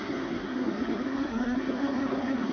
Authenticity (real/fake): fake